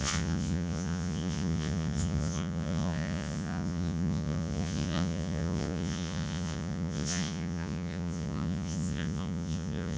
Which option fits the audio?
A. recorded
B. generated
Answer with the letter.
B